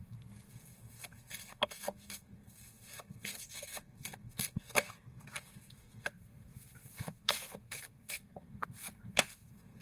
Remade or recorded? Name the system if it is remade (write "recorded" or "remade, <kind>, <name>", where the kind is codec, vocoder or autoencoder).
remade, codec, SNAC